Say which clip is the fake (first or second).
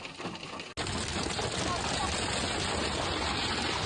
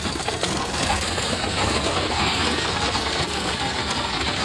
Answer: second